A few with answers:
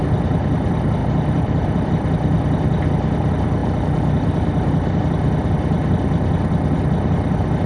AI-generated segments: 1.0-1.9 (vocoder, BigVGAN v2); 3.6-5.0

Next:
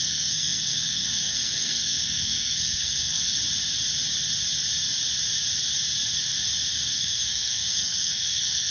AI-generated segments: 0.0-3.4 (codec, SNAC); 6.7-8.7